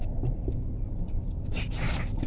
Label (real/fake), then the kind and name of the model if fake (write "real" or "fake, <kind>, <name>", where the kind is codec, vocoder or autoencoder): real